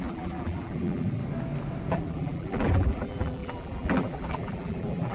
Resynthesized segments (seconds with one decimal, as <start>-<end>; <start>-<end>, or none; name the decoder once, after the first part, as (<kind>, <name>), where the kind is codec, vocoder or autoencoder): 0.0-1.2 (vocoder, BigVGAN v2); 1.9-5.1